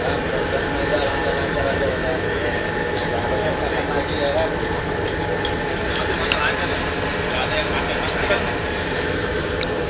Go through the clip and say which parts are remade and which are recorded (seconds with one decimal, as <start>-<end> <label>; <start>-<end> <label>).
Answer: 0.0-1.2 recorded; 1.2-3.6 remade; 3.6-9.9 recorded